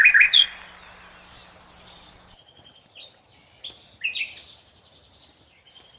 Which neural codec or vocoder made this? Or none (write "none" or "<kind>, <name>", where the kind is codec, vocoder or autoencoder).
none